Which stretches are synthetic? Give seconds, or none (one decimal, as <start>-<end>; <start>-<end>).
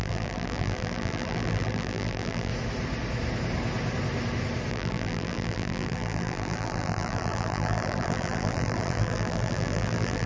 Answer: 0.0-2.5; 4.7-10.3